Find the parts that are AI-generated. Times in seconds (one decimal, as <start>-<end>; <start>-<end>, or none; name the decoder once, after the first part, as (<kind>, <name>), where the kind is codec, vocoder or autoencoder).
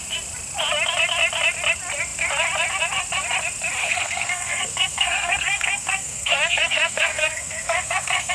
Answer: 3.8-8.3 (codec, SNAC)